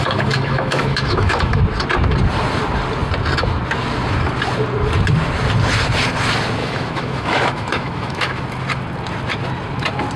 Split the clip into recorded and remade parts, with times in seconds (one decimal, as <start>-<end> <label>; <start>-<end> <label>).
0.0-1.6 remade; 1.6-6.6 recorded; 6.6-8.4 remade; 8.4-10.2 recorded

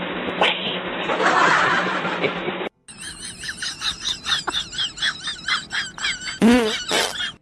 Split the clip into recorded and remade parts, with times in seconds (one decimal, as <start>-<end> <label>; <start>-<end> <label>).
0.0-7.4 recorded

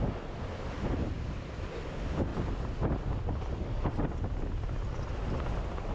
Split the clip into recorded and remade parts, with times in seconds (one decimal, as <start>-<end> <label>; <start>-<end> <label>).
0.0-5.9 recorded

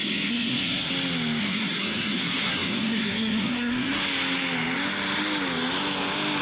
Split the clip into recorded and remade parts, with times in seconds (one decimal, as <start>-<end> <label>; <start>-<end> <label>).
0.0-0.9 remade; 0.9-1.4 recorded; 1.4-4.0 remade; 4.0-6.4 recorded